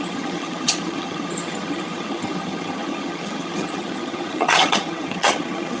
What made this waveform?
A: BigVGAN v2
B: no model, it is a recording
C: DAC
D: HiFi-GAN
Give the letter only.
D